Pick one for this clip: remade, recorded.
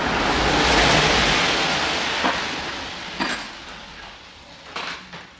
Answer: recorded